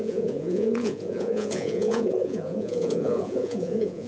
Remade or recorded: remade